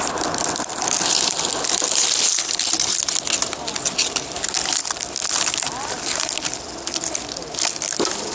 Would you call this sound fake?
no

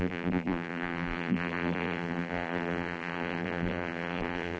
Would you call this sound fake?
yes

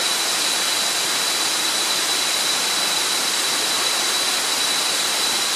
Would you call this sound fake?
yes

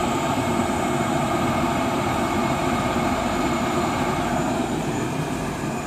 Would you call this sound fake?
yes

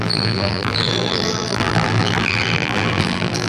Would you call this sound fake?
yes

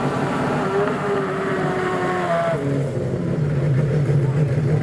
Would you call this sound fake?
yes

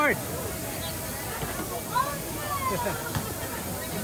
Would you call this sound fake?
no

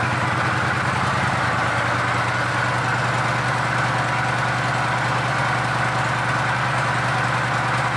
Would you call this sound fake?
no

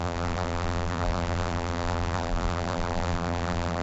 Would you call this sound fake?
yes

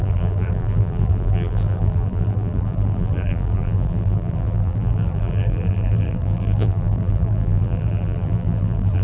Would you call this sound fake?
yes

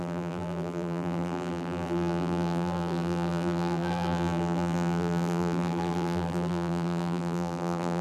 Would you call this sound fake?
yes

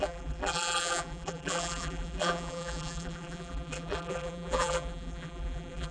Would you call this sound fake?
yes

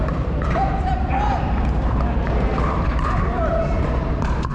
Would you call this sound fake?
yes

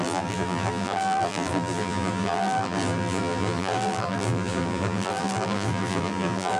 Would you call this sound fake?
yes